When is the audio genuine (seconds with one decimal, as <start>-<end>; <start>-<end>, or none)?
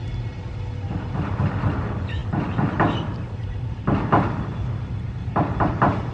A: 0.0-6.1